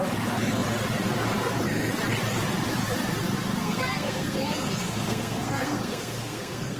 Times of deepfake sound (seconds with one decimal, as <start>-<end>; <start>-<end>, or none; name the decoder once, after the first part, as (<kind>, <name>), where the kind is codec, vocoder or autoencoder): 3.6-6.8 (codec, SNAC)